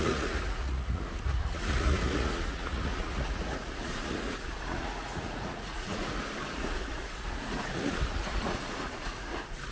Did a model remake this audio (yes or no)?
yes